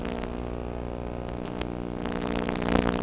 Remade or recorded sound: remade